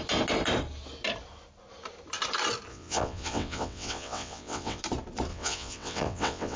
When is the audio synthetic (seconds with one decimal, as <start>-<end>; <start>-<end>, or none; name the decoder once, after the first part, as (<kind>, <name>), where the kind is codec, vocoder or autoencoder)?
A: 2.7-4.8 (vocoder, WaveNeXt); 5.3-6.6